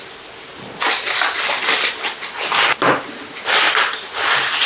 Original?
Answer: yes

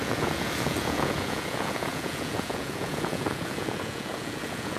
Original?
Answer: no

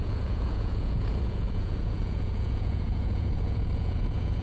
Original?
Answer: no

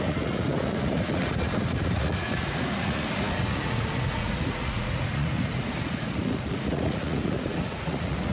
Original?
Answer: no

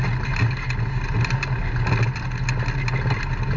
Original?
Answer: yes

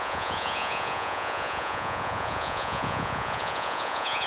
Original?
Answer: no